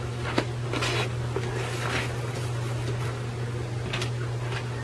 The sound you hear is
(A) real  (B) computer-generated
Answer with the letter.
A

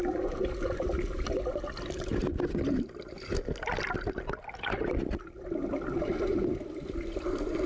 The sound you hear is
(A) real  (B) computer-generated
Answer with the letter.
A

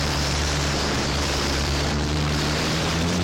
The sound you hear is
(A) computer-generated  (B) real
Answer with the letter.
A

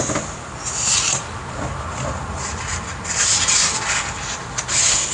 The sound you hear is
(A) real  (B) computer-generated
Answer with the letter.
A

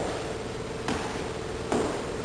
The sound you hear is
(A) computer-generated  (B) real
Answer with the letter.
B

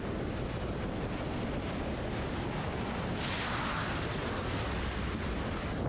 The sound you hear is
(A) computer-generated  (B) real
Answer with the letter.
B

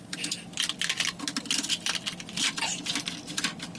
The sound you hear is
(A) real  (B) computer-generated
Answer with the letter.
A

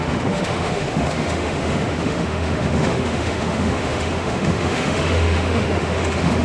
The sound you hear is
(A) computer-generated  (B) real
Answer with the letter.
A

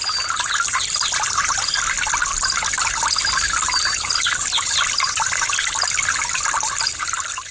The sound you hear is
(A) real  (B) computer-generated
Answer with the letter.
A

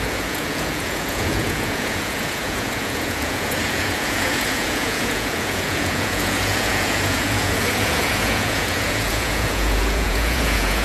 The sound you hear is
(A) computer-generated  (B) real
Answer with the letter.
A